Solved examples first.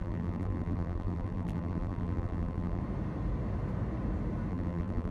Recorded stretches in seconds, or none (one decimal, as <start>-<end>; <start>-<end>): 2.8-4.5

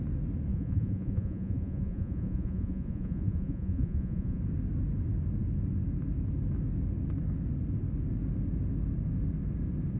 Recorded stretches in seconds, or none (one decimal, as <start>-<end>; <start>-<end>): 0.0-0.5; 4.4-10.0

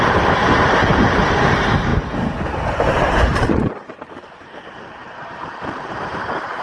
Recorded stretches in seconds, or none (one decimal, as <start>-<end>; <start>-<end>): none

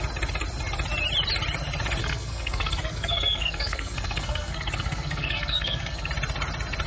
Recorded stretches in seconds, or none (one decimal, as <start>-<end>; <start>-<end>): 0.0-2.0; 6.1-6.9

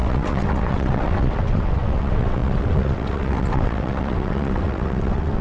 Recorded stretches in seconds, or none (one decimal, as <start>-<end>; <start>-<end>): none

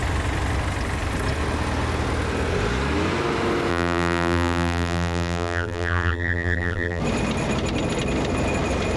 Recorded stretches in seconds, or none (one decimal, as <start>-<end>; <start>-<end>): 0.0-3.7; 7.0-9.0

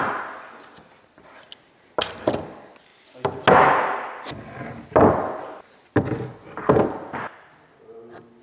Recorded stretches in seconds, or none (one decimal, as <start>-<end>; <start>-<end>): 0.0-8.4